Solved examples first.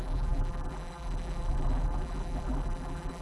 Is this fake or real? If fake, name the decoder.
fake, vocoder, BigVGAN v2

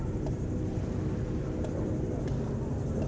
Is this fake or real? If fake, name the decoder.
real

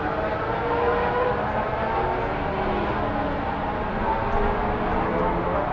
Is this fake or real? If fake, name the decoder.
real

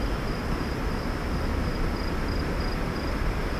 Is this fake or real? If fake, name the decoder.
real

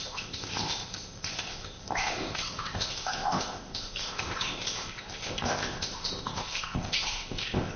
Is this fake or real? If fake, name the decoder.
fake, codec, ZipCodec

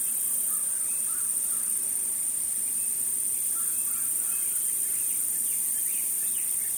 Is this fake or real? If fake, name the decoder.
real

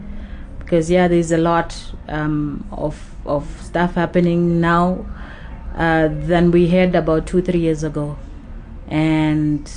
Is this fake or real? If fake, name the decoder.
real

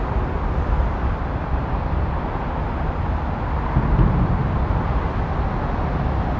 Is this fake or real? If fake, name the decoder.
real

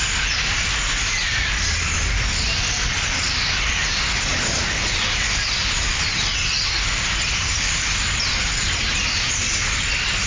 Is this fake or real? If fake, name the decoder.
real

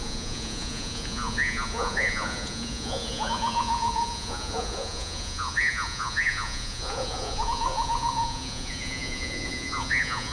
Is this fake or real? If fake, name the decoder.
fake, vocoder, Vocos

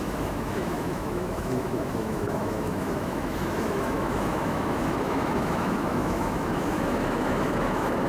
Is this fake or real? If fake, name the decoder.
fake, autoencoder, DAC-VAE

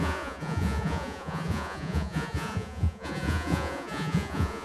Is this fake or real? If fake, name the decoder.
fake, vocoder, Vocos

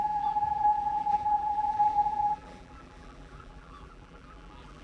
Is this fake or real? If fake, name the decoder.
fake, vocoder, BigVGAN v2